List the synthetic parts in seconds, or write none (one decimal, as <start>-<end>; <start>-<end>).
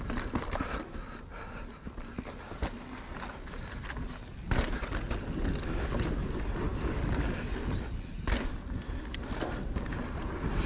none